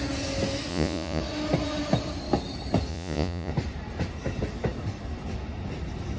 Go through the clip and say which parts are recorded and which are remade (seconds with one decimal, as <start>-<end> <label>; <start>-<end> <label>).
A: 0.0-0.7 recorded; 0.7-1.2 remade; 1.2-2.9 recorded; 2.9-3.5 remade; 3.5-6.2 recorded

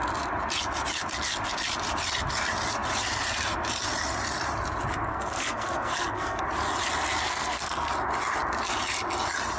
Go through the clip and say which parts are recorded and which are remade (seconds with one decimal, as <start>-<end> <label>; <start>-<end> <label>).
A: 0.0-5.1 recorded; 5.1-6.4 remade; 6.4-7.2 recorded; 7.2-7.9 remade; 7.9-9.6 recorded

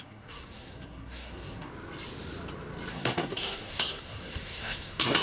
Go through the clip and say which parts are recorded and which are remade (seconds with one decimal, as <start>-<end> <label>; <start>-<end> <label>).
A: 0.0-1.7 remade; 1.7-2.9 recorded; 2.9-5.2 remade

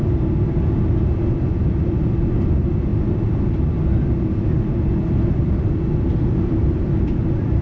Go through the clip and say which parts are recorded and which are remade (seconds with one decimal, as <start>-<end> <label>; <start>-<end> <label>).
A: 0.0-2.9 recorded; 2.9-7.6 remade